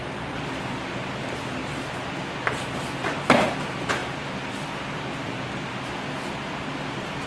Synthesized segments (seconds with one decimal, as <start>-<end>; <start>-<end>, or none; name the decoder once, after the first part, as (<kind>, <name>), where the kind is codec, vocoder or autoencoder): 0.0-1.8 (vocoder, BigVGAN v2); 4.0-5.7